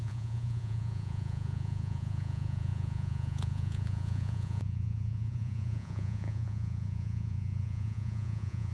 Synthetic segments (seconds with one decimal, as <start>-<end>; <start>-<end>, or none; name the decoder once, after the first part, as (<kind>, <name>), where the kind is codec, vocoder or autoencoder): 0.0-8.7 (vocoder, Vocos)